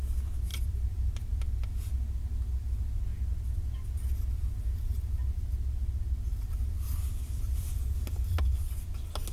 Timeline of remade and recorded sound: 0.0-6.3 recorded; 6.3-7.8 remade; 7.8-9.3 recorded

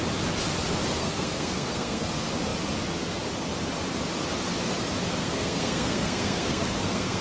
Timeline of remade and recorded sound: 0.0-1.0 recorded; 1.0-2.1 remade; 2.1-5.2 recorded; 5.2-7.2 remade

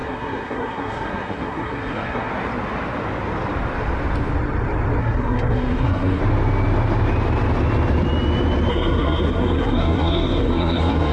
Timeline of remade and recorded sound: 0.0-2.3 remade; 2.3-5.0 recorded; 5.0-6.2 remade; 6.2-8.7 recorded; 8.7-11.1 remade

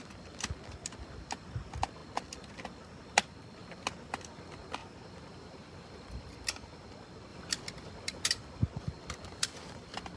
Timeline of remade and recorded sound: 0.0-4.8 recorded; 4.8-5.9 remade; 5.9-10.2 recorded